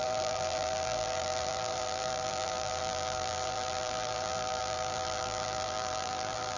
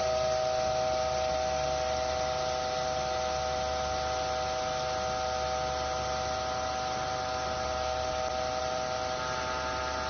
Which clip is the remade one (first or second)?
first